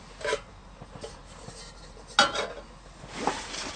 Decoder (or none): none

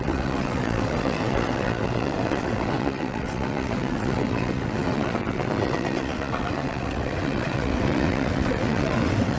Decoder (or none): vocoder, WaveNeXt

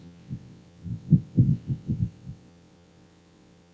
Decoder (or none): vocoder, WaveNeXt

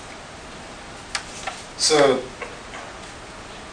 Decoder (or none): none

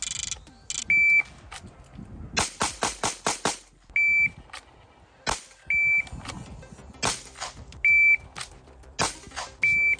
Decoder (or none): none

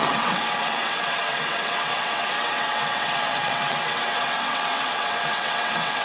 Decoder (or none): vocoder, WaveNeXt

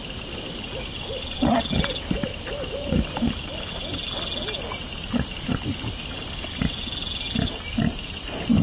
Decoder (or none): none